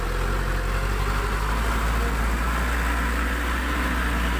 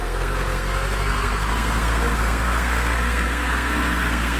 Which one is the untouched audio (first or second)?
first